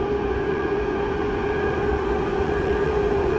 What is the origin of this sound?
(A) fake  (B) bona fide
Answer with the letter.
A